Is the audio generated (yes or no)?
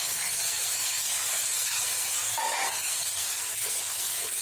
yes